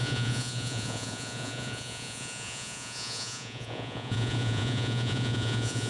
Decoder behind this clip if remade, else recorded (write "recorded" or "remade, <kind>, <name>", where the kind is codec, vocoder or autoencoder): remade, vocoder, Vocos